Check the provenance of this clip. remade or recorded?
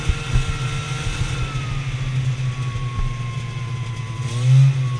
recorded